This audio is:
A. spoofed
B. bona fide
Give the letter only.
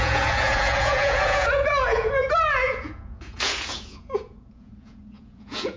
A